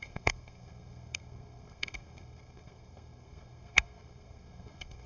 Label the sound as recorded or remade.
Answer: remade